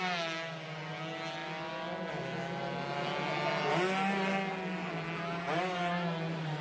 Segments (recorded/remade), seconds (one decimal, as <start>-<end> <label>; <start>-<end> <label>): 0.0-6.6 recorded